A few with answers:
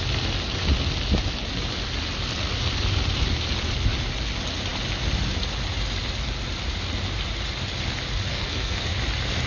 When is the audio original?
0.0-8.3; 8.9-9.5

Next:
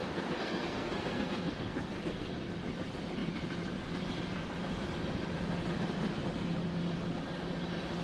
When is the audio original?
2.5-8.0

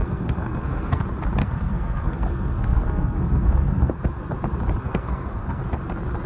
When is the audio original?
1.0-1.4; 3.9-4.8; 5.6-6.3

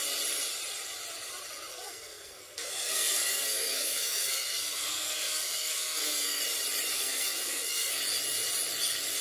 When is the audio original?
0.0-1.7; 6.4-6.9; 8.0-9.2

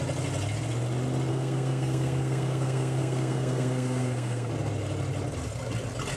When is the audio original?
0.0-1.3; 4.5-6.2

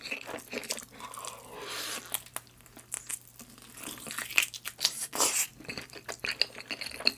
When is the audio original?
0.0-7.2